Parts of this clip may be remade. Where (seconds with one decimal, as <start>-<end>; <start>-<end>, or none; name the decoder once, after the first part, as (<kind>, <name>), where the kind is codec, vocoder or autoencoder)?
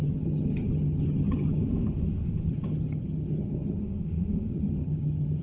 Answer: 0.0-1.6 (vocoder, HiFi-GAN); 2.5-3.8; 4.5-5.4